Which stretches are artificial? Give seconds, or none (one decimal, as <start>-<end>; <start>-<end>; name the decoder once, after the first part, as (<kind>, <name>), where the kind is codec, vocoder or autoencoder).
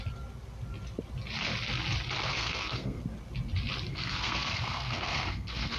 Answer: 2.3-3.0 (codec, SNAC); 3.9-5.8